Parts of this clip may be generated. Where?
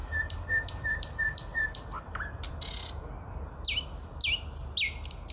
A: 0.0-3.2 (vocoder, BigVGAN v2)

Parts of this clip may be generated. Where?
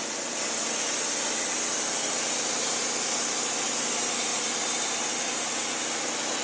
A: 4.3-5.2 (vocoder, BigVGAN v2)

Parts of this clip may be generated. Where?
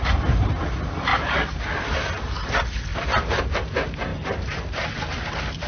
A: 1.1-2.2 (vocoder, BigVGAN v2); 2.9-3.4; 4.1-5.7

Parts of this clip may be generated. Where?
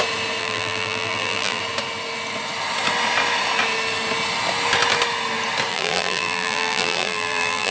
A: 0.4-1.6 (vocoder, BigVGAN v2); 5.7-7.7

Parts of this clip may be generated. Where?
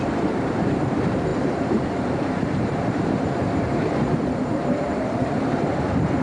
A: 0.0-6.2 (vocoder, BigVGAN v2)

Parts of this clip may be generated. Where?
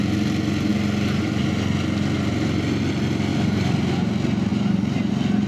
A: 3.3-3.9 (vocoder, BigVGAN v2); 4.5-5.1